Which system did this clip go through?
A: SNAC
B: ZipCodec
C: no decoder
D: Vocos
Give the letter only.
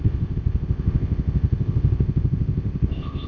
B